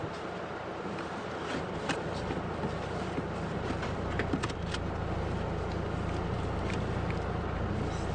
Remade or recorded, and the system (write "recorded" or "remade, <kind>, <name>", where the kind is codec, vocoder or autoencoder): recorded